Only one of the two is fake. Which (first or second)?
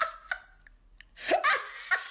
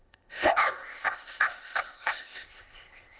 second